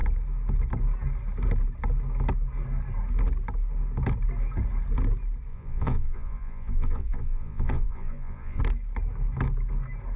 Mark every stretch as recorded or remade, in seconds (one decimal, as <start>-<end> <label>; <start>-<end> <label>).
0.0-5.5 recorded; 5.5-8.6 remade; 8.6-10.2 recorded